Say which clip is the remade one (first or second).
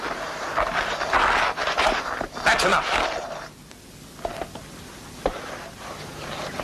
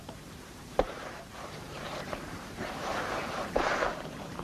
second